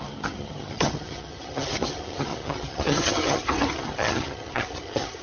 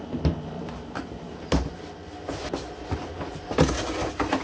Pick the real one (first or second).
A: second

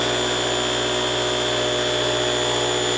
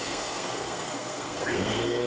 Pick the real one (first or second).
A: first